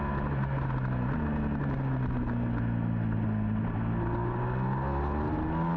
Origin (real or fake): real